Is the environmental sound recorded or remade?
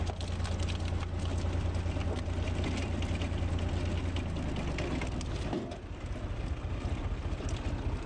recorded